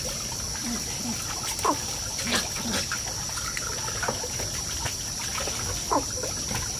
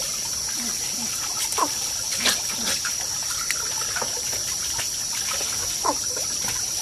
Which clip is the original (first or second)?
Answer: first